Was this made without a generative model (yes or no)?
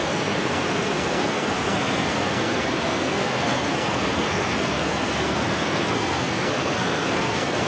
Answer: no